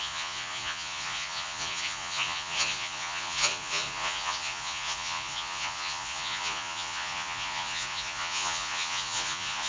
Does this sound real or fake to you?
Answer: fake